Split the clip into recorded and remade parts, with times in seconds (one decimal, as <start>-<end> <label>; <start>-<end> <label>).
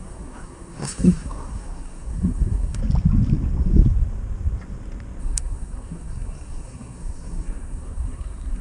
0.0-2.8 remade; 2.8-5.2 recorded; 5.2-8.6 remade